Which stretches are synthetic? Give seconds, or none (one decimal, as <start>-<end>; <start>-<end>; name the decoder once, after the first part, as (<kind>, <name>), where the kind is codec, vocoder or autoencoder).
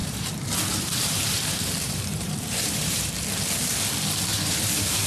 0.0-3.1 (vocoder, BigVGAN v2); 4.3-5.1